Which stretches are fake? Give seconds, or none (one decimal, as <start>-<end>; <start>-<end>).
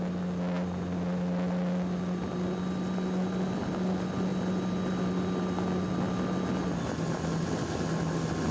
none